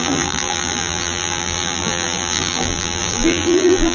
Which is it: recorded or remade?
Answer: remade